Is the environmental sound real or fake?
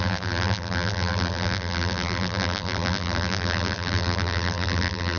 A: fake